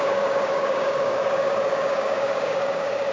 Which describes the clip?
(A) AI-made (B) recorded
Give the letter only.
A